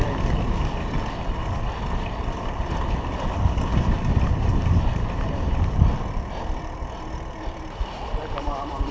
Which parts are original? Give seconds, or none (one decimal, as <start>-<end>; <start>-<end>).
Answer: 0.0-8.9